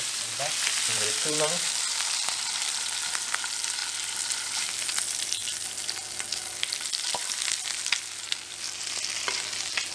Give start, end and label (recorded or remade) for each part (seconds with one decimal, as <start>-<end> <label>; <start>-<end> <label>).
0.0-3.8 remade; 3.8-4.4 recorded; 4.4-5.4 remade; 5.4-7.1 recorded; 7.1-9.9 remade